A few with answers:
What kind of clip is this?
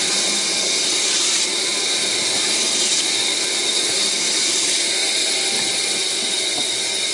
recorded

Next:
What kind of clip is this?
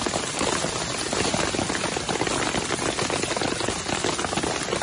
recorded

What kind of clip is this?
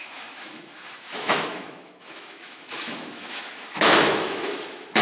remade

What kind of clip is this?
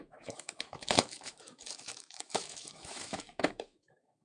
remade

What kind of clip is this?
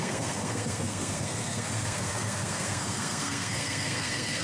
remade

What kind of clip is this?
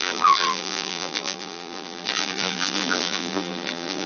remade